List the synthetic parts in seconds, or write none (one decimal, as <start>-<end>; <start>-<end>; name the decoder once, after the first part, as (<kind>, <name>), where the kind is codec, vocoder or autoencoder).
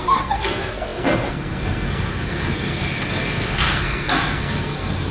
0.0-5.1 (codec, SNAC)